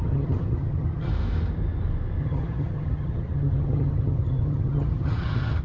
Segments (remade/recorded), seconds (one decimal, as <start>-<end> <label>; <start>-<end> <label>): 0.0-1.1 remade; 1.1-2.2 recorded; 2.2-5.6 remade